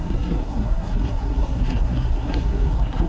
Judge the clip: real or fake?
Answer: fake